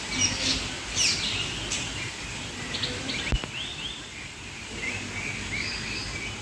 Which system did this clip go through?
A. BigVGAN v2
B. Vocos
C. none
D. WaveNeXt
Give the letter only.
C